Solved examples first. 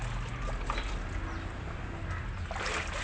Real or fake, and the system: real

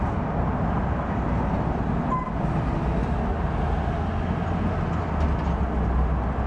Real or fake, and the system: real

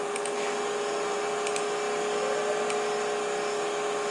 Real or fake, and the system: real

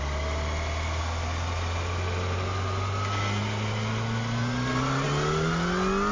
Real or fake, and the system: real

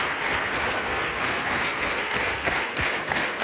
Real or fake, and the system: fake, codec, SNAC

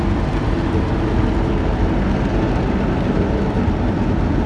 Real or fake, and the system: real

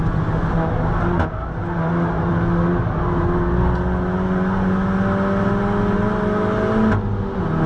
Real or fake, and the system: real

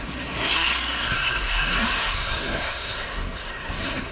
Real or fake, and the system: fake, codec, SNAC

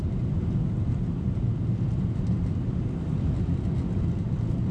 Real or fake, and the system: real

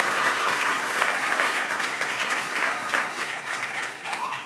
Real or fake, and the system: fake, codec, SNAC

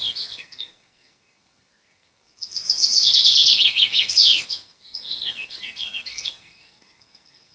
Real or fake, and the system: fake, codec, SNAC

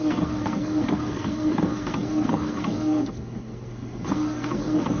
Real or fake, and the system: fake, codec, SNAC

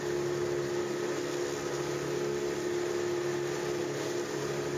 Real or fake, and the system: real